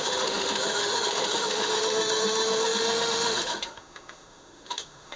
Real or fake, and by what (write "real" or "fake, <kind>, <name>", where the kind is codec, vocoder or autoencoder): fake, autoencoder, DAC-VAE